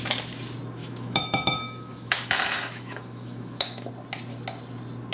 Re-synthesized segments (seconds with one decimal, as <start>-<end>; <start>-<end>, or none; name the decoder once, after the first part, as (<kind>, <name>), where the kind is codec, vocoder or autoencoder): 0.8-3.9 (autoencoder, DAC-VAE)